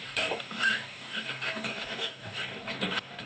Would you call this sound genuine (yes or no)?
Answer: no